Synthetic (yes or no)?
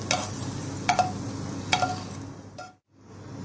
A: no